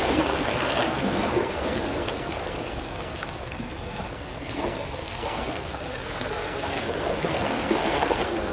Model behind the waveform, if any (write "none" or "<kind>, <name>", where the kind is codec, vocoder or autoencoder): codec, SNAC